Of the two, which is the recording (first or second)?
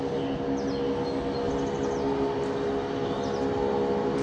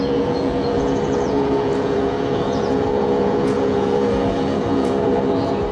first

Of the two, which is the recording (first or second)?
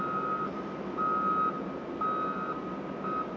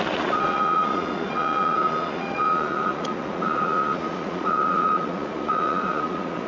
first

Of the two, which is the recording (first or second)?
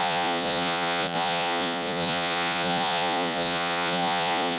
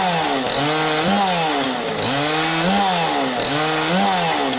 second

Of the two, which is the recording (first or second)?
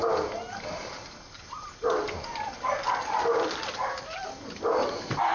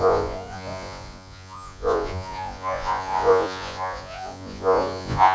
first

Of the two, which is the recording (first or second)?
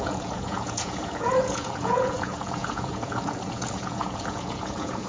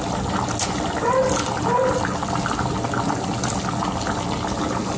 second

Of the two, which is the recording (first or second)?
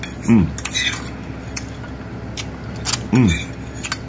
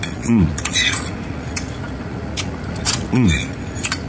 first